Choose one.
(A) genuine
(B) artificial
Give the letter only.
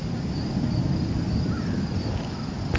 A